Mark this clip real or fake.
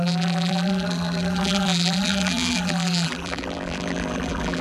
fake